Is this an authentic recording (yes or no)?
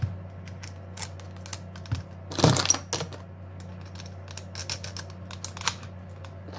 yes